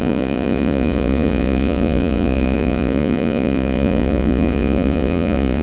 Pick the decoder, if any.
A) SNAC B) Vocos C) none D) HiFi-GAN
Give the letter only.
B